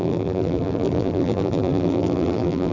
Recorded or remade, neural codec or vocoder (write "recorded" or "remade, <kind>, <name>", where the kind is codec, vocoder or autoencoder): remade, vocoder, BigVGAN v2